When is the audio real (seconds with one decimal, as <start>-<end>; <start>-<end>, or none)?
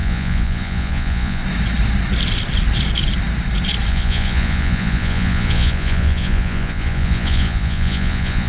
1.4-3.9